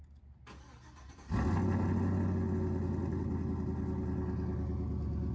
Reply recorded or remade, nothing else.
recorded